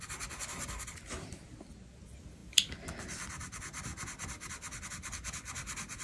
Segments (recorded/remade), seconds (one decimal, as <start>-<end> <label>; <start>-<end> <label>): 0.0-6.0 recorded